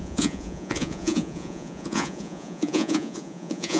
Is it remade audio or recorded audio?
remade